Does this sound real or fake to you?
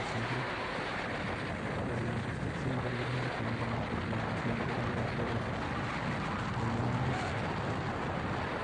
real